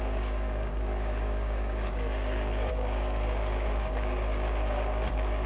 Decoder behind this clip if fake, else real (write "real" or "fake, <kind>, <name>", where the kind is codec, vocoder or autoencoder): fake, codec, DAC